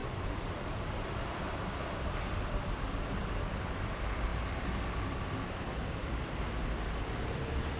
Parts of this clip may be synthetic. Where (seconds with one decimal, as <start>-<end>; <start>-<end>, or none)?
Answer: 0.0-7.8